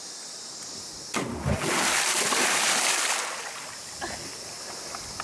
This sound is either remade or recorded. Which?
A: recorded